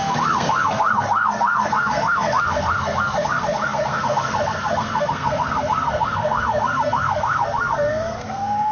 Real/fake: fake